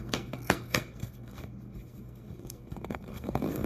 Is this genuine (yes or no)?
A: no